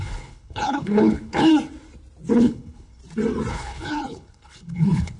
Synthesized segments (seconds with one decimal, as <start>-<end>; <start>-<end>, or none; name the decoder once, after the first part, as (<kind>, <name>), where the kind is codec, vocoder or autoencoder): 0.0-1.5 (codec, HILCodec); 2.4-3.0; 3.5-5.2